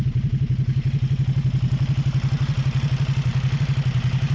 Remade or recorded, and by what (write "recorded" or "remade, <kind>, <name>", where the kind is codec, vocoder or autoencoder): recorded